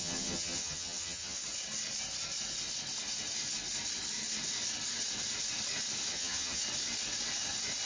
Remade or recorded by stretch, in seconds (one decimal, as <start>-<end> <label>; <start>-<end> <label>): 0.0-1.4 remade; 1.4-6.1 recorded; 6.1-6.6 remade; 6.6-7.9 recorded